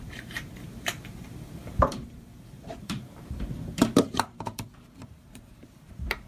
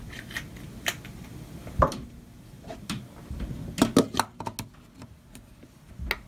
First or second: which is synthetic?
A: first